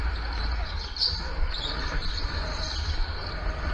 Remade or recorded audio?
recorded